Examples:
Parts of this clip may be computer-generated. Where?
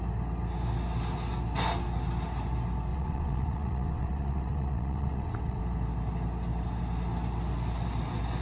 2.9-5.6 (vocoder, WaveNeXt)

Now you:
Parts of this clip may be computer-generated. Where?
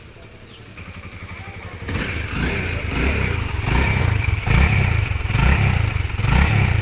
4.0-4.5 (codec, SNAC)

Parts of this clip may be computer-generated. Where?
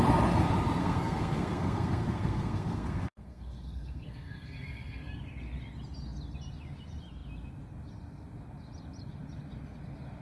0.8-5.1 (codec, SNAC)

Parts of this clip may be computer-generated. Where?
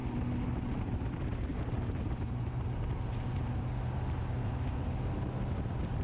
none